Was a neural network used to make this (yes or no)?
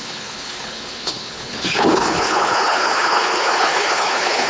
yes